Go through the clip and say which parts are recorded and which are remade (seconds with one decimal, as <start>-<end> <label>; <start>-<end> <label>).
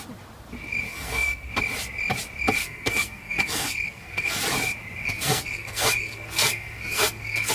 0.0-0.9 recorded; 0.9-1.5 remade; 1.5-2.6 recorded; 2.6-4.4 remade; 4.4-5.0 recorded; 5.0-7.5 remade